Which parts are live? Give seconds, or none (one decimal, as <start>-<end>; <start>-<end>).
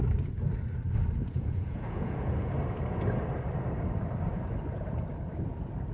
0.0-1.2; 2.5-5.9